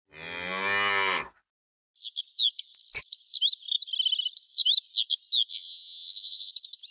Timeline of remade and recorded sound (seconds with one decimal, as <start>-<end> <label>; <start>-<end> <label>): 0.0-5.5 recorded; 5.5-6.5 remade; 6.5-6.9 recorded